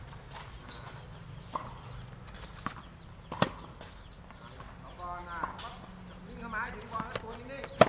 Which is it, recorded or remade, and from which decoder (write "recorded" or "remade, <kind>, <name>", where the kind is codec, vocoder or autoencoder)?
recorded